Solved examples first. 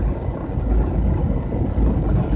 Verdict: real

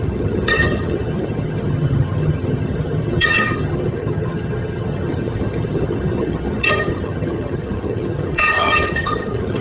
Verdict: fake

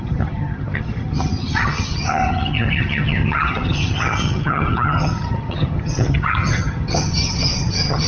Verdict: fake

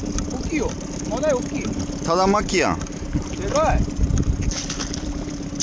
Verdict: real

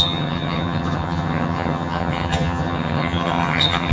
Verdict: fake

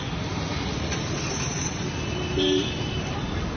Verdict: real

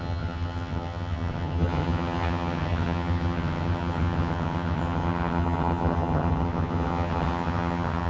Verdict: fake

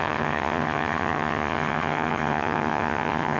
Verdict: fake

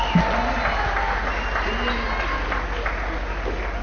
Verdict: real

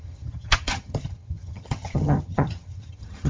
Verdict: fake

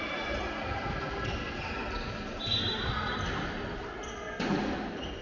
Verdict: real